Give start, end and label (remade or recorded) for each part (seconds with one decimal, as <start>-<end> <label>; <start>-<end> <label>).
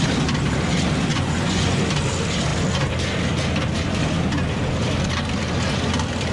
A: 0.0-1.1 recorded; 1.1-1.8 remade; 1.8-6.3 recorded